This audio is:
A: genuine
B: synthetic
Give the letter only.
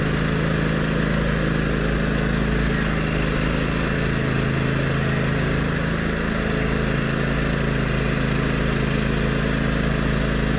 A